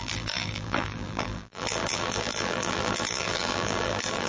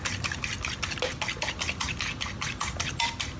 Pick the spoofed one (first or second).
first